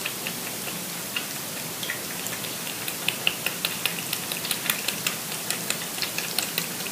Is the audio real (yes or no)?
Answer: yes